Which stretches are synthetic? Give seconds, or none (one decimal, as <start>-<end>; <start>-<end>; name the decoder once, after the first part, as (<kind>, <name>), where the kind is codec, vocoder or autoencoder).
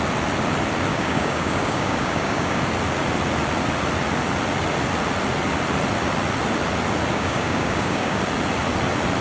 0.9-2.6 (codec, DAC); 7.1-8.2